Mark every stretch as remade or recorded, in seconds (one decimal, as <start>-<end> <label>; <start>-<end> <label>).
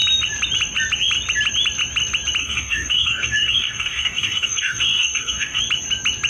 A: 0.0-2.4 recorded; 2.4-5.6 remade; 5.6-6.3 recorded